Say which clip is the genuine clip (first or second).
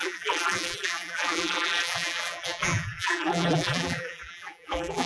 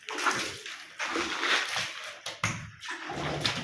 second